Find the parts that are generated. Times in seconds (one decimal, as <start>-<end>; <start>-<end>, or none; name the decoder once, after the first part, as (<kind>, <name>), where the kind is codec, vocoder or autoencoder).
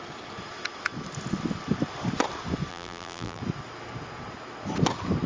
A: 2.7-3.4 (vocoder, BigVGAN v2)